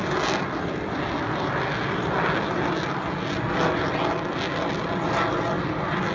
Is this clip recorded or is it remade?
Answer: recorded